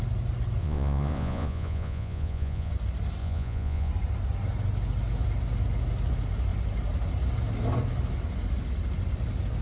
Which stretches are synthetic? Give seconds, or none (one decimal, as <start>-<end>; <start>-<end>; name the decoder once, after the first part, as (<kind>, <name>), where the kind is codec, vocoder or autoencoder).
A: 0.6-2.7 (vocoder, Vocos); 3.2-3.9